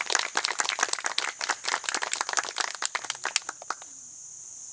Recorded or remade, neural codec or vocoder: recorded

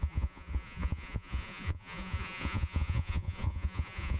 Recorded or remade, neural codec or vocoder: remade, vocoder, Vocos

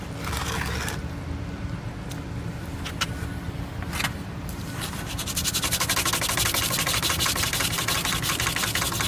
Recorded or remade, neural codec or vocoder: recorded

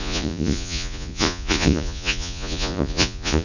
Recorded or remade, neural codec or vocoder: remade, vocoder, Vocos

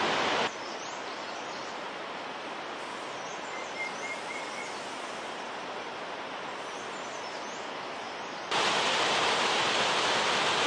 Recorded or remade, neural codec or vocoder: recorded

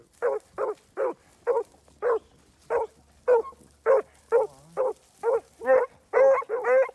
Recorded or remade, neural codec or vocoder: recorded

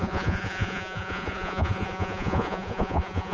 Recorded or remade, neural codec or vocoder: remade, vocoder, Vocos